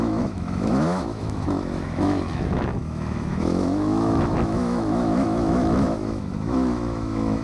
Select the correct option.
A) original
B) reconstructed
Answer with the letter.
B